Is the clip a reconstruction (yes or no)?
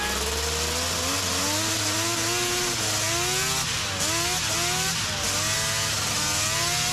no